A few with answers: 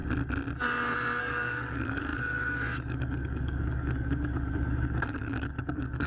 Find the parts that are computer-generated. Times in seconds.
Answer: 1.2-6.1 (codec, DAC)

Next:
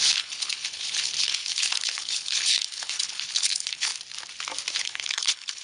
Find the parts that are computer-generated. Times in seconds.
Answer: 0.0-3.9 (codec, HILCodec); 4.7-5.6

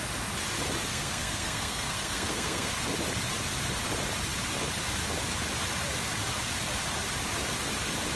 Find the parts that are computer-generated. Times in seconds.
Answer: 0.9-2.7 (codec, SNAC)

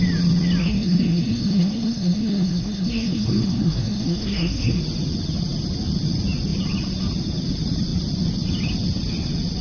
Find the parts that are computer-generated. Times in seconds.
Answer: 0.6-4.8 (codec, SNAC)

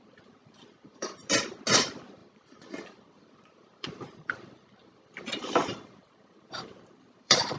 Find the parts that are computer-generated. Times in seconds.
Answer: 0.0-1.2 (vocoder, BigVGAN v2); 1.7-7.6